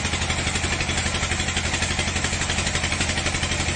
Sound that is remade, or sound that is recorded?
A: recorded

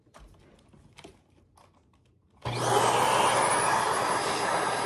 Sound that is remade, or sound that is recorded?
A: recorded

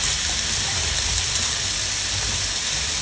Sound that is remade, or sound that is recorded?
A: recorded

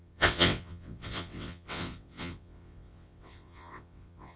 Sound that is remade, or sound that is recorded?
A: remade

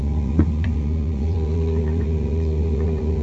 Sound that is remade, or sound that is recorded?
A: remade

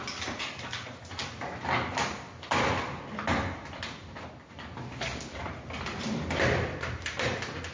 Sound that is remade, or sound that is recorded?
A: recorded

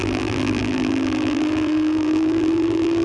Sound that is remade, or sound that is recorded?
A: remade